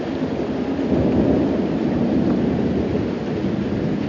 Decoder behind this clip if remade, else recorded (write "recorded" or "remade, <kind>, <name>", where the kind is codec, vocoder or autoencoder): recorded